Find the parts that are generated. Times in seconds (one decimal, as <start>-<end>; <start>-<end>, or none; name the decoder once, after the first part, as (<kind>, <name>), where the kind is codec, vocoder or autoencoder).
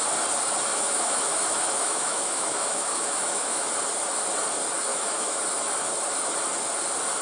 0.7-3.7 (autoencoder, DAC-VAE); 4.9-5.4